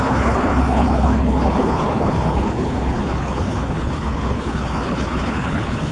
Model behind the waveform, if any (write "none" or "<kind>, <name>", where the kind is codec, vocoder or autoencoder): codec, HILCodec